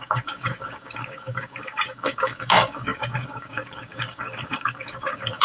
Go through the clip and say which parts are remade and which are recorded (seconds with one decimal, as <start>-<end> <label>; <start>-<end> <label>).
0.0-5.4 remade